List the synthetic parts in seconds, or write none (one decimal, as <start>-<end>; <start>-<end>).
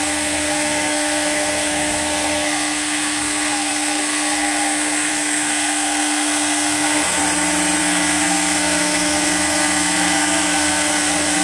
0.0-7.2; 7.8-11.4